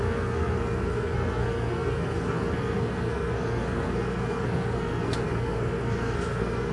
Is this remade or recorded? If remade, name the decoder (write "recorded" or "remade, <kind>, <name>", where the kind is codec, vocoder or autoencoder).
remade, codec, SNAC